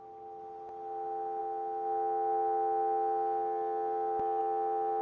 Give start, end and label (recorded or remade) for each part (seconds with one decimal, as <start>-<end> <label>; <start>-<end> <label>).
0.0-5.0 recorded